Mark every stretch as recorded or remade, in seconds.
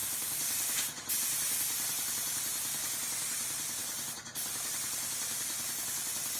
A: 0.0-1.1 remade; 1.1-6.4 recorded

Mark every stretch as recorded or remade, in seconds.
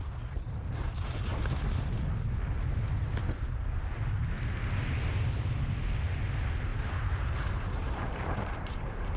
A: 0.0-6.7 recorded; 6.7-9.2 remade